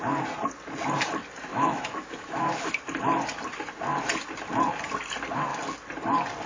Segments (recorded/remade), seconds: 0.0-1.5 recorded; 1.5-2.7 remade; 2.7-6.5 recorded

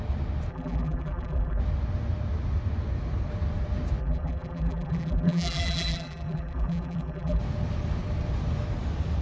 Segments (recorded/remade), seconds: 0.0-0.5 recorded; 0.5-1.6 remade; 1.6-4.0 recorded; 4.0-7.4 remade; 7.4-9.2 recorded

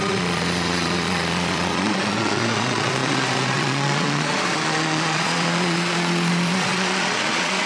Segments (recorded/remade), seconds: 0.0-7.7 remade

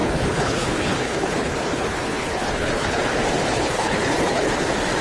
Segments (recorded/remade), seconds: 0.0-3.0 remade; 3.0-3.5 recorded; 3.5-4.5 remade; 4.5-5.0 recorded

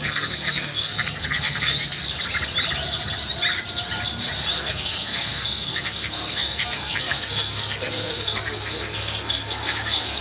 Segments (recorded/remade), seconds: 0.0-2.0 remade; 2.0-4.5 recorded; 4.5-10.2 remade